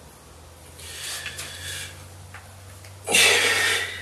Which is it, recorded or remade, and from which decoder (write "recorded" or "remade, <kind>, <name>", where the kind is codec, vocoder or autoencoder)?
recorded